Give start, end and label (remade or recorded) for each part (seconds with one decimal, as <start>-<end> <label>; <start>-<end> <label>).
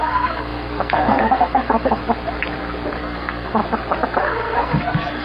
0.0-2.0 remade; 2.0-3.0 recorded; 3.0-3.6 remade; 3.6-4.2 recorded; 4.2-5.2 remade